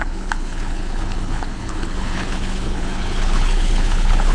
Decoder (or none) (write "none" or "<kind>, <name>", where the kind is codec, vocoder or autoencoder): codec, HILCodec